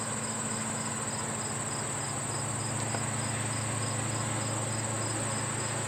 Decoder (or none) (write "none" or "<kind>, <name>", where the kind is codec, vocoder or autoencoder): none